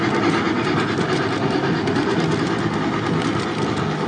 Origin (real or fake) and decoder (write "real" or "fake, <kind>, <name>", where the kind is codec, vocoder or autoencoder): real